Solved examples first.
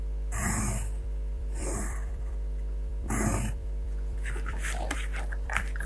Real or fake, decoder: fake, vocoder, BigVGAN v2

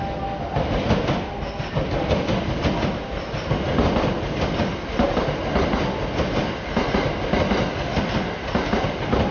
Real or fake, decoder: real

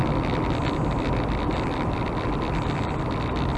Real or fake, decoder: real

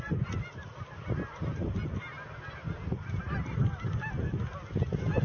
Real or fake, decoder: real